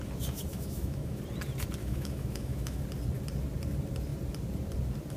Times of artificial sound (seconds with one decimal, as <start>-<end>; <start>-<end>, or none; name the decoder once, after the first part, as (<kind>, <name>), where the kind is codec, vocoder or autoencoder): 0.5-1.2 (autoencoder, DAC-VAE); 1.8-2.8